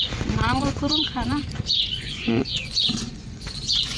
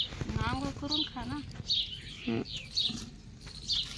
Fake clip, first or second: first